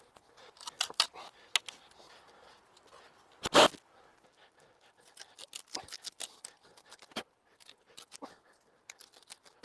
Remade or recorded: recorded